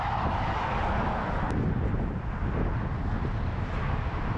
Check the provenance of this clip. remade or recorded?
recorded